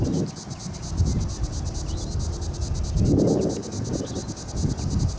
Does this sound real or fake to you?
real